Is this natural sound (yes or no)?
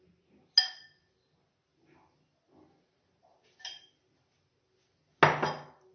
yes